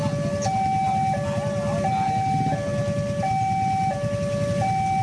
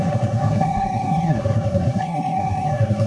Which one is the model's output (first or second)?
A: second